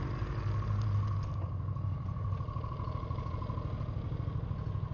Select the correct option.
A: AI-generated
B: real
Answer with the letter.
B